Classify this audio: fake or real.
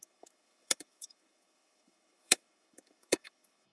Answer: fake